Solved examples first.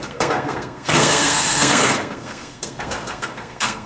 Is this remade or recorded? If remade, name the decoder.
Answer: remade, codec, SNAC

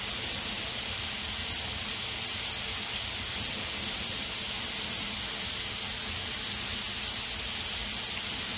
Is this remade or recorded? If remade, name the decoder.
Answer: recorded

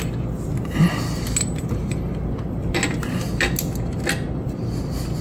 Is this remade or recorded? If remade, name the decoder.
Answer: recorded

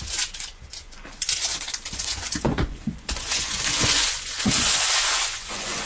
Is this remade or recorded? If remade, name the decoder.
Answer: remade, vocoder, Vocos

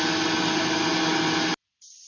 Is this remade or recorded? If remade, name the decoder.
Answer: recorded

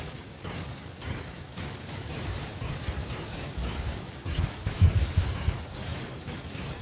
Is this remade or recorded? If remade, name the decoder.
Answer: remade, codec, DAC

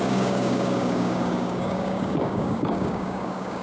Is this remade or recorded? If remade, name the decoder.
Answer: remade, codec, DAC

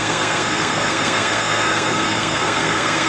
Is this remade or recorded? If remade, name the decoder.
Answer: remade, codec, SNAC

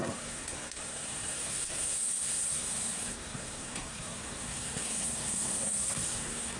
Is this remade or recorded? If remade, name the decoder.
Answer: remade, codec, SNAC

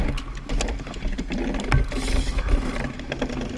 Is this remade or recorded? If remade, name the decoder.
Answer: recorded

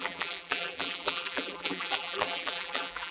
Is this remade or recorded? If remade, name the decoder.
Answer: remade, vocoder, BigVGAN v2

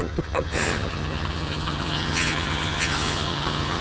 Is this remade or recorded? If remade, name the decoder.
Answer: remade, vocoder, HiFi-GAN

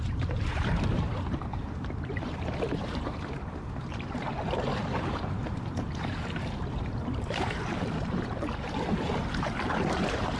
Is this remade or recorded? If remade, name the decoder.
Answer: remade, vocoder, BigVGAN v2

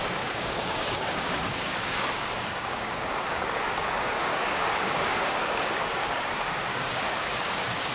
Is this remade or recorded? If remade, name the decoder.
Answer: remade, codec, DAC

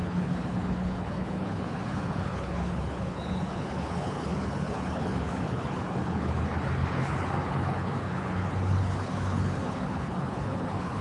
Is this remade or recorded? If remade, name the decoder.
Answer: remade, codec, HILCodec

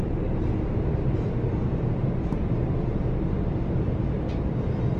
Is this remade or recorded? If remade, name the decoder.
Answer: recorded